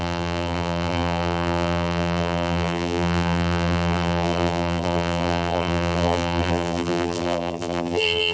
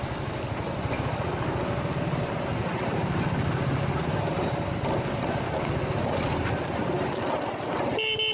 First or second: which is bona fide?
second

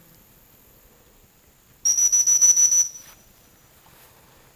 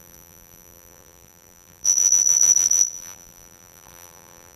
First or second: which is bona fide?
first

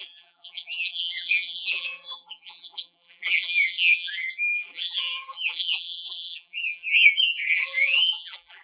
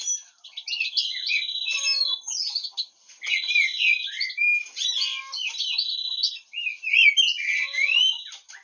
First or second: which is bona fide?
second